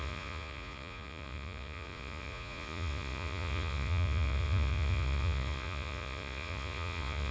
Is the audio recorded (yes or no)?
no